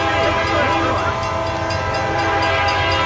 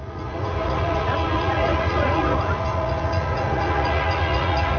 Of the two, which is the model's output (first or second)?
second